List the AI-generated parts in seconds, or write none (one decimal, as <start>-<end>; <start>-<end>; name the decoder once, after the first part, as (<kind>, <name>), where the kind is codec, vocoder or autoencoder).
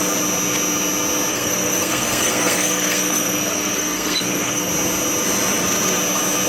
1.3-4.7 (codec, SNAC)